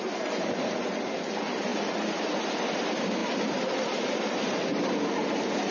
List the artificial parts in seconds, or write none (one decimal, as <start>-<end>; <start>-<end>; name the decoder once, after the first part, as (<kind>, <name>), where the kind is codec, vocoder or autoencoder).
none